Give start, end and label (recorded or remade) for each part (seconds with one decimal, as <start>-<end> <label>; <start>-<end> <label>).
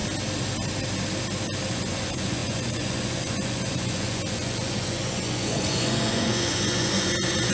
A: 0.0-1.7 recorded; 1.7-7.5 remade